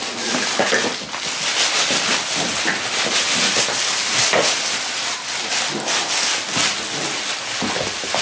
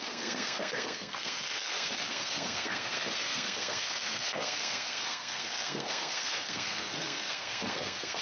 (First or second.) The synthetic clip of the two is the second